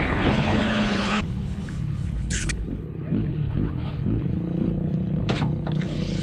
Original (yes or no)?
no